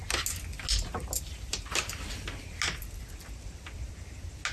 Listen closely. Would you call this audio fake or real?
real